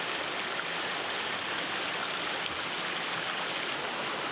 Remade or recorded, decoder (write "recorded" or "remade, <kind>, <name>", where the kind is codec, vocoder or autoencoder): recorded